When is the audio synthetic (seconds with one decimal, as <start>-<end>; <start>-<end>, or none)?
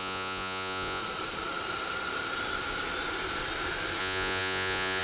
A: 0.0-1.0; 4.0-5.0